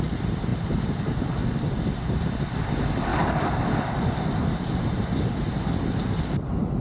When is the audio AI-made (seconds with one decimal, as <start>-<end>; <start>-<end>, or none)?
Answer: 0.5-2.3; 3.1-6.2